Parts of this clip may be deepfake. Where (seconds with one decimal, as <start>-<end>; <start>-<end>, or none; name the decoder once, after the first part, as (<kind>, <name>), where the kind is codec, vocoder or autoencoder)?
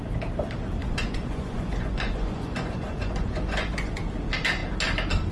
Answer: 0.8-4.0 (vocoder, Vocos)